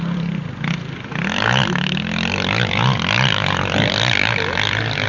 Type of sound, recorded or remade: recorded